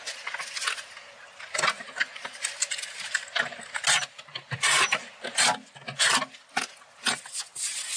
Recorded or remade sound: recorded